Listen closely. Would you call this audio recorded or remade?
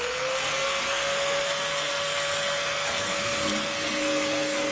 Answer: remade